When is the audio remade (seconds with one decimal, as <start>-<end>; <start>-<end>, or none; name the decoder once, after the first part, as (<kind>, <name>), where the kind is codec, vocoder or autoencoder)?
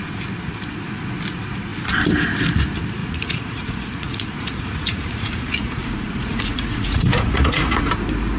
3.0-7.9 (vocoder, Vocos)